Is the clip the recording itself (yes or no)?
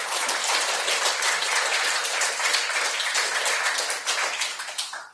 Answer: yes